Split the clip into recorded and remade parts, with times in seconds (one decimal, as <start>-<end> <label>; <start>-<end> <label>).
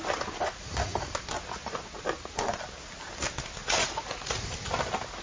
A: 0.0-3.6 recorded; 3.6-4.5 remade; 4.5-5.2 recorded